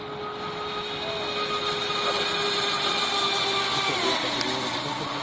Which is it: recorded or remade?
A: recorded